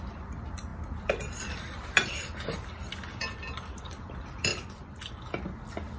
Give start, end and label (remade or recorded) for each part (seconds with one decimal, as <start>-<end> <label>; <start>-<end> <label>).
0.0-6.0 recorded